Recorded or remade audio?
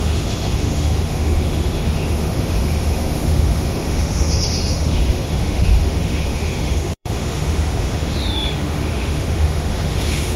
remade